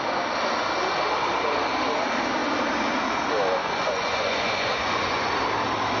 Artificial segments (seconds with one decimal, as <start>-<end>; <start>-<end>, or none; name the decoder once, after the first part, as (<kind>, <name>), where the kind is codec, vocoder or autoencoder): 3.6-5.3 (vocoder, Vocos)